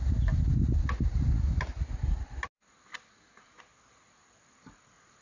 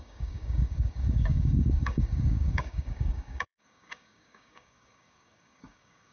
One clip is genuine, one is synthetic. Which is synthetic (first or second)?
second